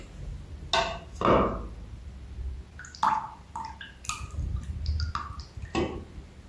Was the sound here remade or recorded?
recorded